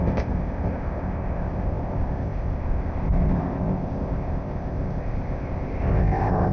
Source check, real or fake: fake